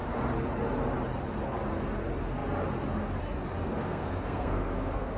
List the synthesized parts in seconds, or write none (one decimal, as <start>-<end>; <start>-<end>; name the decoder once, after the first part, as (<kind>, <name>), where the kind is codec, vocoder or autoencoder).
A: 3.6-5.2 (codec, SNAC)

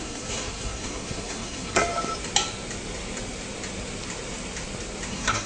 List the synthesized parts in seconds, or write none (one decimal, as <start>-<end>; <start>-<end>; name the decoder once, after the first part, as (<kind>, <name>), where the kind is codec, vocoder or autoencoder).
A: 0.0-1.8 (codec, SNAC); 5.1-5.5

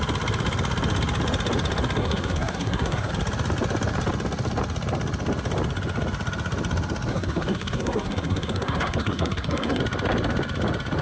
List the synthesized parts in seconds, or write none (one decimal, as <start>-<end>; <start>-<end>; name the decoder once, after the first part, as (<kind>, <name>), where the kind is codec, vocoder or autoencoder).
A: 2.0-3.1 (codec, SNAC); 7.1-9.8

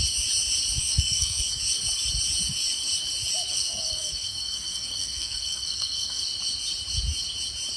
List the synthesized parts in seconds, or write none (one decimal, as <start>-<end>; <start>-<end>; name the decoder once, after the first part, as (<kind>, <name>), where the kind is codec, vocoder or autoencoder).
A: 0.8-1.6 (codec, SNAC); 3.5-6.2

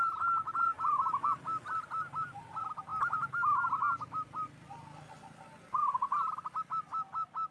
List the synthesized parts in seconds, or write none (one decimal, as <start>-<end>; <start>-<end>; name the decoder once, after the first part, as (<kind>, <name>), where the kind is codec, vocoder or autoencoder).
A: none

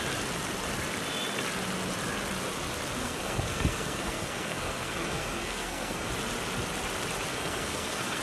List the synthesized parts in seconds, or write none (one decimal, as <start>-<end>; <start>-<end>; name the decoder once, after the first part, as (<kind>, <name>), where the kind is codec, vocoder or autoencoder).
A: 3.0-6.1 (codec, SNAC); 7.3-8.2